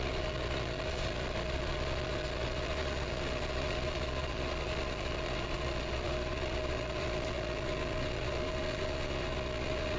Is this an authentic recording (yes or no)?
no